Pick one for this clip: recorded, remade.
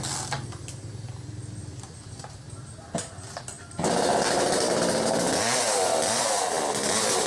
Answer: recorded